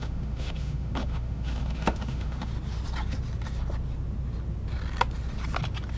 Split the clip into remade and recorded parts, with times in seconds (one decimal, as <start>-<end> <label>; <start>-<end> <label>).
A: 0.0-2.5 remade; 2.5-6.0 recorded